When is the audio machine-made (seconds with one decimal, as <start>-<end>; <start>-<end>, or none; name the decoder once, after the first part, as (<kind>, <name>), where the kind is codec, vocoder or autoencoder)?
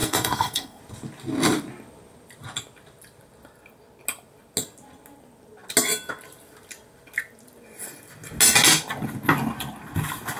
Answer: 0.0-0.8 (codec, SNAC)